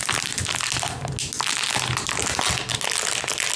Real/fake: real